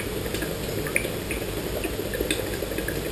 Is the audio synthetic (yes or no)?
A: no